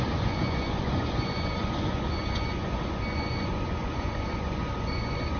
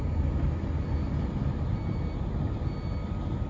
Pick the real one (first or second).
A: second